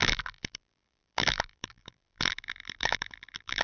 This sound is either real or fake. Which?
fake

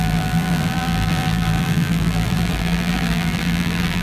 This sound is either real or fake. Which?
fake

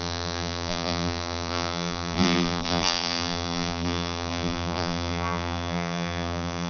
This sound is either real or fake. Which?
fake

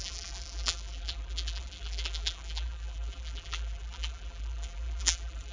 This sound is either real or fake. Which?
fake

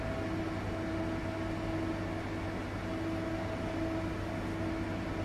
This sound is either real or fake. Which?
real